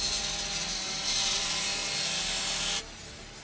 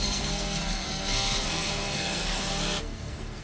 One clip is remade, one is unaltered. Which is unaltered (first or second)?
first